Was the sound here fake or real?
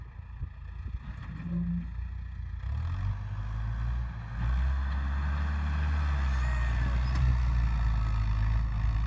real